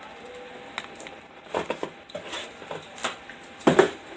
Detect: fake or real real